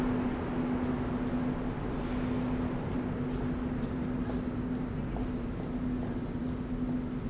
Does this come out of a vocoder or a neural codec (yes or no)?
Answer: no